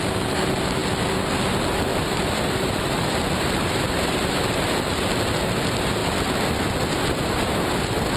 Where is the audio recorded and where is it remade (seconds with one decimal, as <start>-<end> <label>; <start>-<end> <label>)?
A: 0.0-1.9 recorded; 1.9-4.6 remade; 4.6-8.2 recorded